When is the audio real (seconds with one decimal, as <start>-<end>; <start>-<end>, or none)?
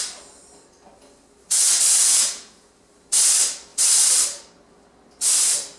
0.0-2.0; 2.7-5.8